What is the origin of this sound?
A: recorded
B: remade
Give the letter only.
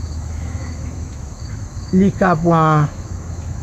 B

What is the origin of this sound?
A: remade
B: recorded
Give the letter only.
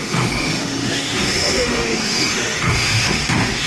A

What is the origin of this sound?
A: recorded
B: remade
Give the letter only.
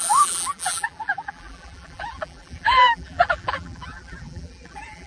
B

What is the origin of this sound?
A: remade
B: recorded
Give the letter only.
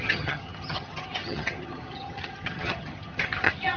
A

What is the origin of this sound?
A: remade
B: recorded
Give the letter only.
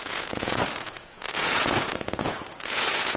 A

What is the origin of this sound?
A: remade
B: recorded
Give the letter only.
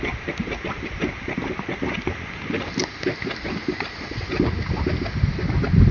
B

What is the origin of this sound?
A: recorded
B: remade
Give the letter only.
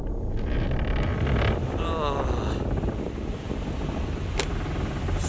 A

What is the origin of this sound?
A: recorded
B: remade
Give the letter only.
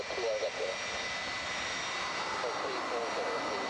A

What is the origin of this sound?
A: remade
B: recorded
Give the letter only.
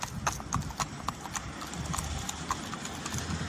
B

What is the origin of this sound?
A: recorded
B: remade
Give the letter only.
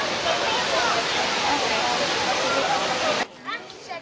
A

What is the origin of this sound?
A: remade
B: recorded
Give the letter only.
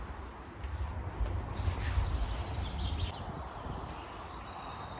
B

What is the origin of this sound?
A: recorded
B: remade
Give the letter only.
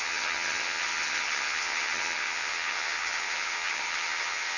B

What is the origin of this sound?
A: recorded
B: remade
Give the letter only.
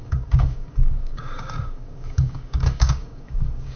B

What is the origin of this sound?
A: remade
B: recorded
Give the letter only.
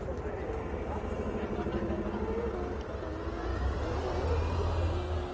B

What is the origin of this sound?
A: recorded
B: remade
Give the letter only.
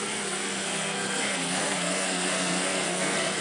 B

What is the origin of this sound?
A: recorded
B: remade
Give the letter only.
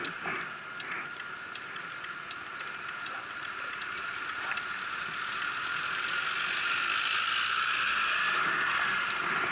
A